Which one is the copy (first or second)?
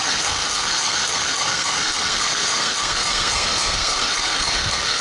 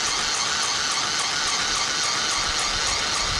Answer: first